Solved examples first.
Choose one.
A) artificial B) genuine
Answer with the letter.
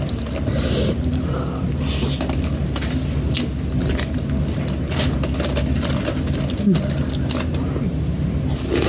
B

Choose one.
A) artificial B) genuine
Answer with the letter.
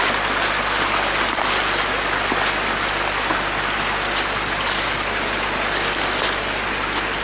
B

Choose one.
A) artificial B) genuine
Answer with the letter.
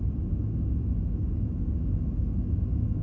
B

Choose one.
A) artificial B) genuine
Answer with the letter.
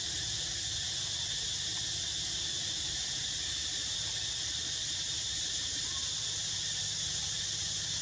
B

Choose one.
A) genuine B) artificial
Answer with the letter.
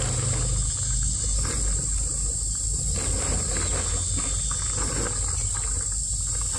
A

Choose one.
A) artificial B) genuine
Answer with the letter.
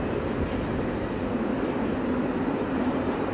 B